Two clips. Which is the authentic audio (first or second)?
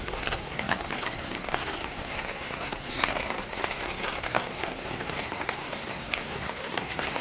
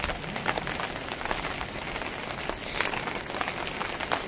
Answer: second